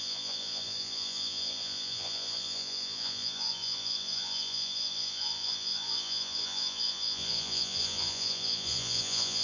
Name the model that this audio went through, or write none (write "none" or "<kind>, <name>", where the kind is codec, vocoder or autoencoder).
vocoder, Vocos